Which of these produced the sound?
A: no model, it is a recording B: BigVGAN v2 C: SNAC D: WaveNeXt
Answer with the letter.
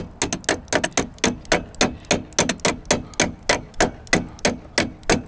A